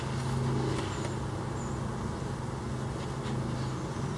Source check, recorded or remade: recorded